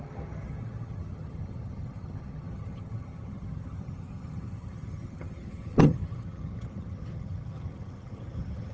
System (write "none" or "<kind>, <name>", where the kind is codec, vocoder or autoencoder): vocoder, HiFi-GAN